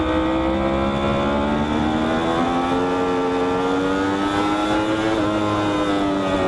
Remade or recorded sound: recorded